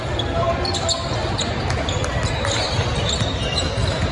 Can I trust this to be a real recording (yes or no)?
yes